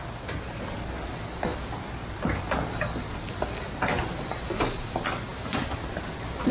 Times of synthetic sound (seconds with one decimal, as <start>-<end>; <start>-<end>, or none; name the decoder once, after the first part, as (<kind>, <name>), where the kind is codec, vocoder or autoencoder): none